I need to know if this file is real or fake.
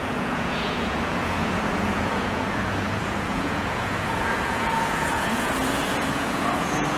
fake